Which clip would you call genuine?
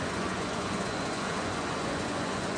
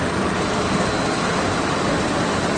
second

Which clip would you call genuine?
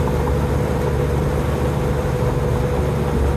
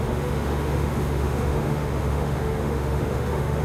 first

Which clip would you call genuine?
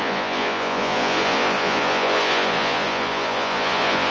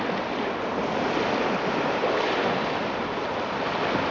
second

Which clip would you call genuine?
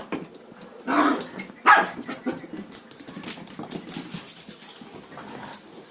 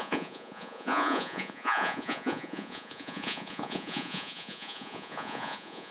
first